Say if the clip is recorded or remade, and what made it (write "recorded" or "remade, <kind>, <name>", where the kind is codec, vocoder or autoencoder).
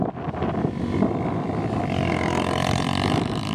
remade, vocoder, BigVGAN v2